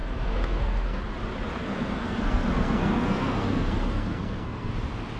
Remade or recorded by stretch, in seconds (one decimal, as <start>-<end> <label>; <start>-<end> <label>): 0.0-1.0 remade; 1.0-1.6 recorded; 1.6-4.7 remade; 4.7-5.2 recorded